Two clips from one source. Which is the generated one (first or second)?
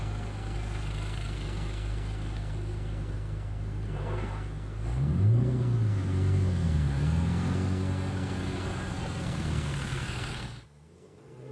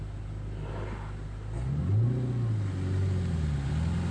first